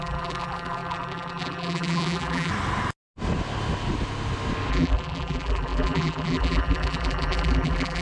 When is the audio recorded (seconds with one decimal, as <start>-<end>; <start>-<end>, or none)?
2.5-4.7